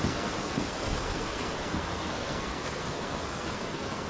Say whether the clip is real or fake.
fake